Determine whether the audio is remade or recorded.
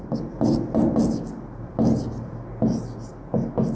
recorded